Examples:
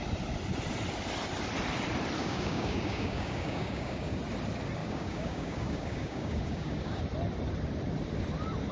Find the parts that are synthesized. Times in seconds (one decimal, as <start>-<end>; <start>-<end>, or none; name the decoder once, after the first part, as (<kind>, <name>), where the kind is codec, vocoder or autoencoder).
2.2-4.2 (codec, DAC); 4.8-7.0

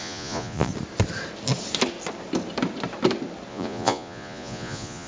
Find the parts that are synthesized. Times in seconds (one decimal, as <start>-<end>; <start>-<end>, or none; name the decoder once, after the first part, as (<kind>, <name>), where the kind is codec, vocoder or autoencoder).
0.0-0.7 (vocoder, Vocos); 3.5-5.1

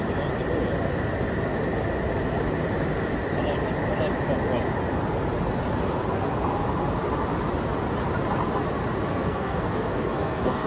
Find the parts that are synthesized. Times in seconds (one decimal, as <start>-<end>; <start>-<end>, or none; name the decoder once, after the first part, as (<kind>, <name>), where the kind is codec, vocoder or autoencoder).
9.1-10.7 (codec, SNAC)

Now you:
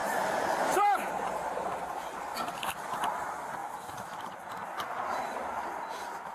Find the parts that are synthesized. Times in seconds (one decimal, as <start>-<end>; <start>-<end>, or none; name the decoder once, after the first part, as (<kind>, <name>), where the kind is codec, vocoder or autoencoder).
3.6-4.2 (autoencoder, DAC-VAE)